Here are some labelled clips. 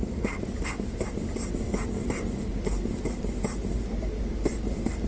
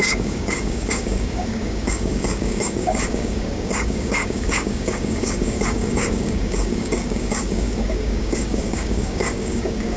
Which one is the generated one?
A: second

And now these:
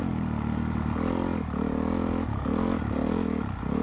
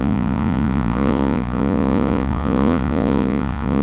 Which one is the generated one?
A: second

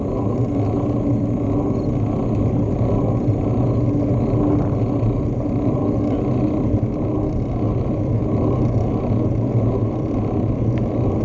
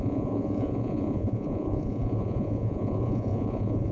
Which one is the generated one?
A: second